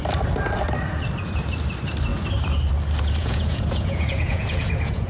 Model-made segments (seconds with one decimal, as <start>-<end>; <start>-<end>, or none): 3.2-5.1